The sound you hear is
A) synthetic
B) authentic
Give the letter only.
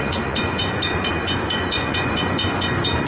A